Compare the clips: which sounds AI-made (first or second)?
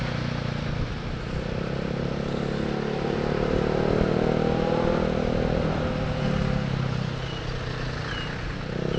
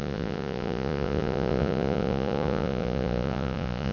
second